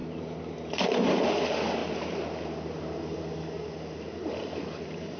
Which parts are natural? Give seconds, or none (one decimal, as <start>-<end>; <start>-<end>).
0.0-1.8